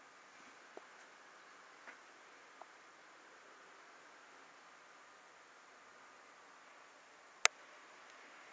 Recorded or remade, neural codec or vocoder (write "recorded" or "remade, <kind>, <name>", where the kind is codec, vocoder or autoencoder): recorded